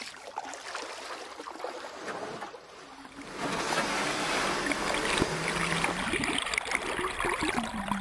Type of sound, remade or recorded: recorded